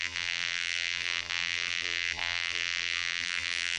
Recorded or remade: remade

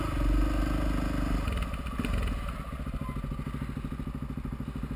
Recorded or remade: recorded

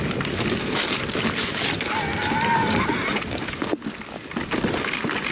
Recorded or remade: recorded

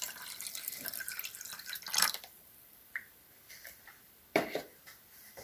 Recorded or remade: remade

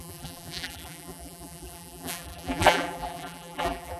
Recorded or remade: remade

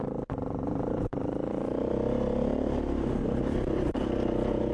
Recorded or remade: remade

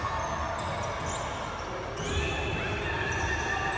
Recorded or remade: recorded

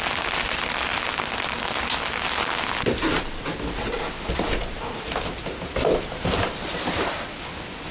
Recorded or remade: remade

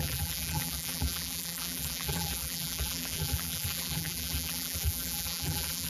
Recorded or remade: remade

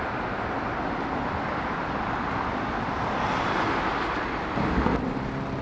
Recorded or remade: recorded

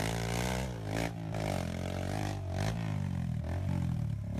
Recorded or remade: recorded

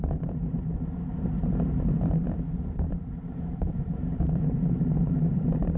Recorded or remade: remade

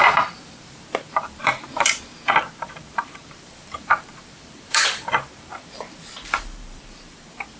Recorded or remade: remade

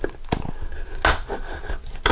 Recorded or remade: recorded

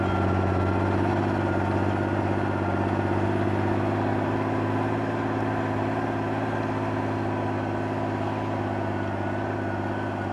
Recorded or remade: recorded